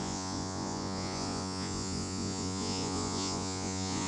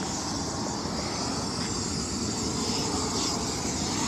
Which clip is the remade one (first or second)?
first